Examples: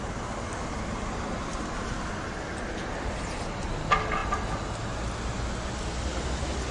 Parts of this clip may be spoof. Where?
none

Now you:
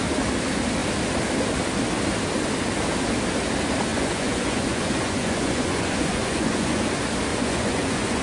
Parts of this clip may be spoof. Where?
3.9-6.8 (vocoder, Vocos); 7.3-8.2